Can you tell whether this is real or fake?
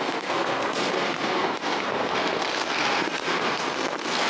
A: fake